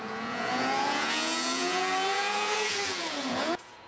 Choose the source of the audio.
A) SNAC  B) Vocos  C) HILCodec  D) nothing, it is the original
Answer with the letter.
B